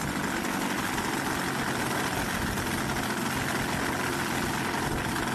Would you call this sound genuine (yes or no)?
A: yes